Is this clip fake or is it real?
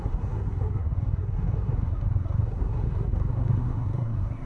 fake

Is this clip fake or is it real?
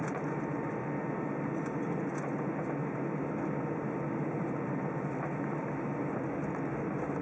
real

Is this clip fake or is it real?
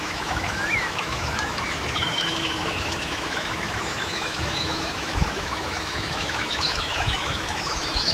fake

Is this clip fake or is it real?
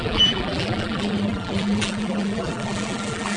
fake